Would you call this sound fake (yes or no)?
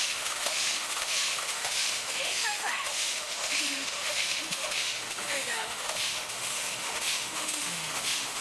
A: yes